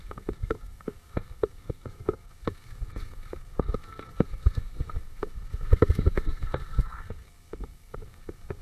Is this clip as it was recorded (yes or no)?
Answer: no